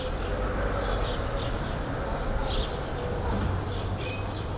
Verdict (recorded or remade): recorded